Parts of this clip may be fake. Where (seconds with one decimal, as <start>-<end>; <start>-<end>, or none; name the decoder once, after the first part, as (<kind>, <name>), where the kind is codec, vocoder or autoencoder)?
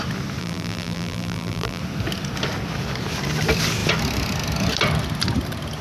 0.4-1.8 (vocoder, BigVGAN v2)